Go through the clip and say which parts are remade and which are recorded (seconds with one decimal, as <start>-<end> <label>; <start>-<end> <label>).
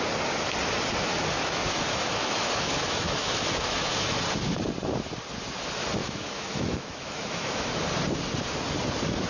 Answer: 0.0-1.1 recorded; 1.1-4.2 remade; 4.2-6.0 recorded; 6.0-7.8 remade; 7.8-9.3 recorded